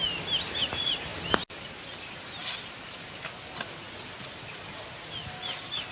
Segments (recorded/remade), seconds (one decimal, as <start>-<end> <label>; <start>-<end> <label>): 0.0-5.9 recorded